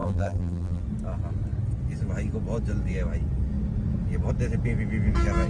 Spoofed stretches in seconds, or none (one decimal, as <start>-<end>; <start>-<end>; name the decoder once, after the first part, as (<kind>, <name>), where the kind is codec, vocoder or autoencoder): 0.0-0.8 (vocoder, BigVGAN v2)